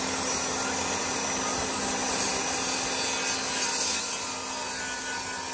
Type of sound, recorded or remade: recorded